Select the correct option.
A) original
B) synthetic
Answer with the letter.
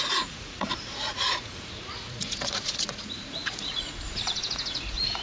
B